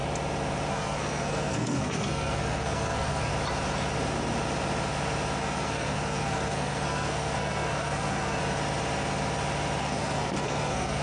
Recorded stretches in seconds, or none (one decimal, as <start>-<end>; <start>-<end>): 0.0-0.7; 3.3-5.4; 8.4-9.8

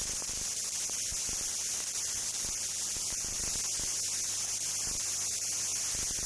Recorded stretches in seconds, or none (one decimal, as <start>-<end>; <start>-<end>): 3.4-6.3

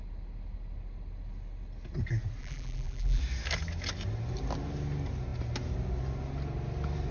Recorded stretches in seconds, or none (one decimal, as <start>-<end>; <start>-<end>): 0.0-2.4; 3.2-7.1

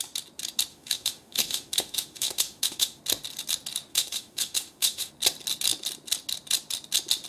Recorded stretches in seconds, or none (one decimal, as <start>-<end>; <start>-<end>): 0.0-0.7; 3.0-3.9; 5.1-7.3

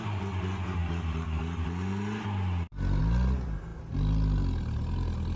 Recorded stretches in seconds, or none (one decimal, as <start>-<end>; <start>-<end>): 0.0-5.4

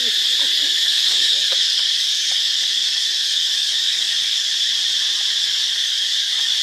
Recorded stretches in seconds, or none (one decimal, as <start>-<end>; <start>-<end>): 0.0-0.5; 4.5-5.4

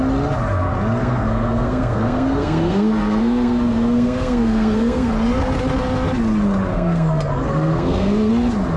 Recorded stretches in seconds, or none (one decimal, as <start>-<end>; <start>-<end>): 0.0-1.0; 5.1-6.7; 8.3-8.8

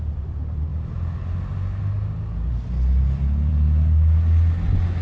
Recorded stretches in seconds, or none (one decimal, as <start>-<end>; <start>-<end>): 0.0-5.0